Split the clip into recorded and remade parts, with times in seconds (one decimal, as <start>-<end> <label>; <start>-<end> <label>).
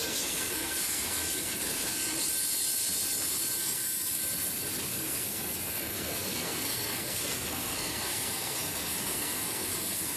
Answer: 0.0-2.0 remade; 2.0-3.6 recorded; 3.6-4.2 remade; 4.2-4.9 recorded; 4.9-10.2 remade